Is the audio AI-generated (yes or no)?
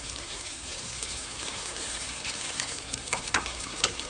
yes